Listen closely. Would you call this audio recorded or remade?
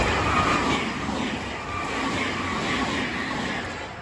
recorded